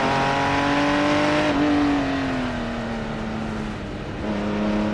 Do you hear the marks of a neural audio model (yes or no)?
no